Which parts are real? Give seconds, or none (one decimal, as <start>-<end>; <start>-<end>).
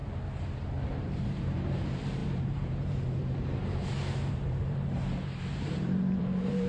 0.0-0.9